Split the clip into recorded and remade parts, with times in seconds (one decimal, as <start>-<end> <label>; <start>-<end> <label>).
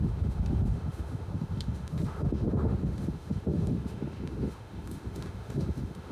0.0-6.1 remade